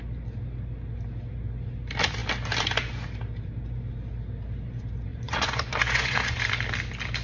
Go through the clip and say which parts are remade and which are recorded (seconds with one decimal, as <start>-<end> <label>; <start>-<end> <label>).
0.0-5.1 recorded; 5.1-6.4 remade; 6.4-7.2 recorded